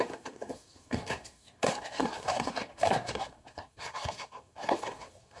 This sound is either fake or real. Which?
fake